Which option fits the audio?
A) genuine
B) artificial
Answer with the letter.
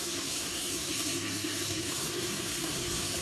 B